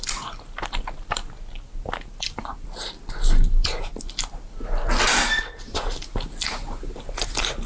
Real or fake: real